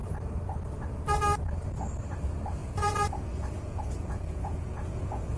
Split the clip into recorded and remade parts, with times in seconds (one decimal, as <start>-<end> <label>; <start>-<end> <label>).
0.0-2.6 recorded; 2.6-5.4 remade